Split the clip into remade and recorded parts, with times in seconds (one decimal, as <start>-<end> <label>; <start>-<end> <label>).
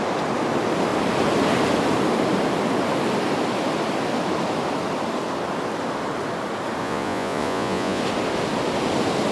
0.0-6.8 recorded; 6.8-8.0 remade; 8.0-9.3 recorded